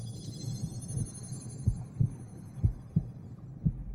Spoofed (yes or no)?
no